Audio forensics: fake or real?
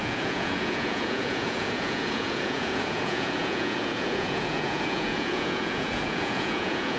fake